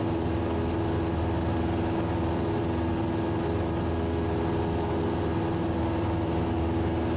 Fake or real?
real